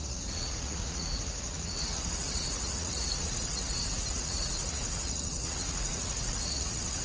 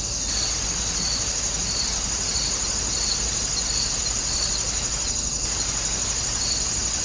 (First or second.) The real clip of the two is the second